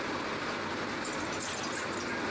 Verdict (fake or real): real